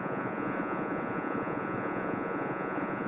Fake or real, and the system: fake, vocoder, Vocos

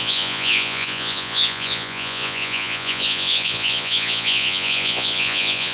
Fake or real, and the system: fake, vocoder, Vocos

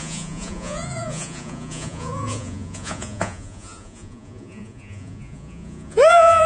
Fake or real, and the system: fake, vocoder, Vocos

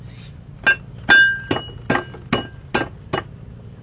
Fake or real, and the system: real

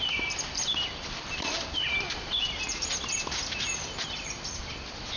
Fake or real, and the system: real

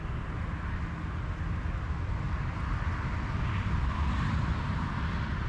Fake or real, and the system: real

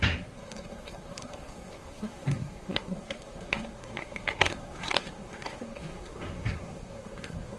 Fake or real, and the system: fake, codec, SNAC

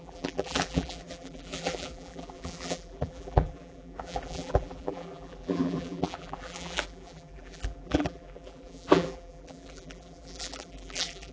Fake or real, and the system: fake, vocoder, BigVGAN v2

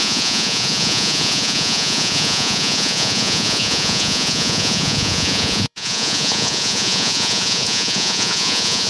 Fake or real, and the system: fake, vocoder, Vocos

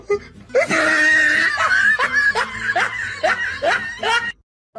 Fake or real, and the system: real